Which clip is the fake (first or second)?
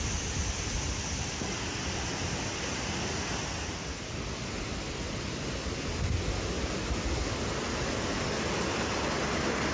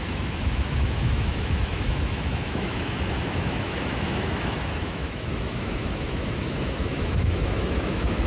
second